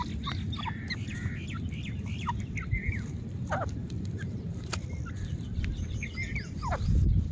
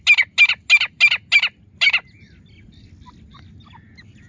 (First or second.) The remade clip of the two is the first